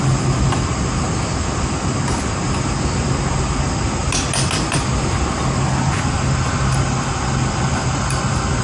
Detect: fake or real real